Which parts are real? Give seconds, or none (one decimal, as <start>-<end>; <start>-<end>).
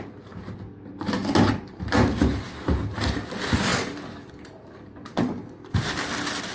0.0-3.7; 5.5-6.5